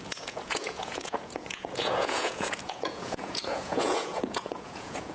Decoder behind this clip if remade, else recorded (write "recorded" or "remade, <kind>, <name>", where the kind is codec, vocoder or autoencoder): remade, vocoder, Vocos